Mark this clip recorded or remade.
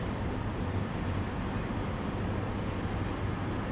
recorded